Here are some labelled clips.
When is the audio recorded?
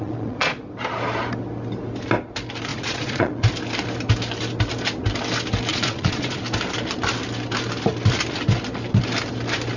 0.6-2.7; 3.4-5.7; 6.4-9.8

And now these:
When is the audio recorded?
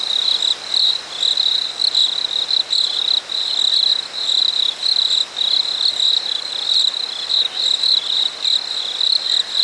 0.0-9.6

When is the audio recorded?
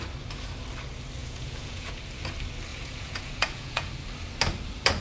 0.0-1.2; 2.0-2.7; 3.9-5.0